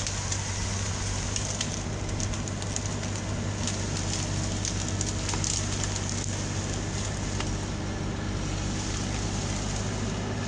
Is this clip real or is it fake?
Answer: real